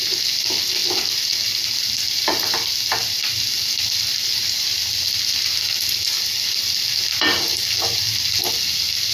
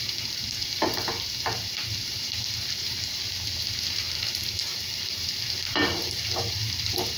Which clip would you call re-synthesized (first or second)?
second